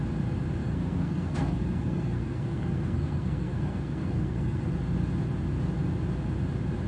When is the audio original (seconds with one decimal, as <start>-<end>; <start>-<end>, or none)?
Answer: 0.0-0.6; 4.7-6.9